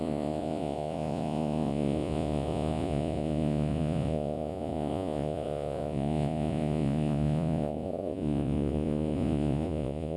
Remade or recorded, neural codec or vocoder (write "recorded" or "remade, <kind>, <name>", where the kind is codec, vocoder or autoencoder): remade, vocoder, Vocos